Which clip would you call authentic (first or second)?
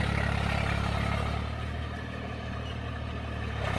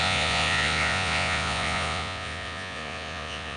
first